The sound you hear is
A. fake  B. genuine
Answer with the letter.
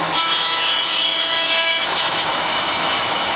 A